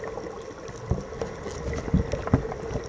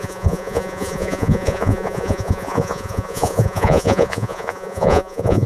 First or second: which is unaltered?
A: first